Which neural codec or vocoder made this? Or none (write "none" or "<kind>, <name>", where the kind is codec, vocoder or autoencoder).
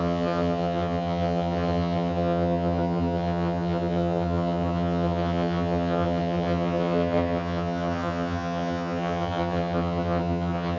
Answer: vocoder, HiFi-GAN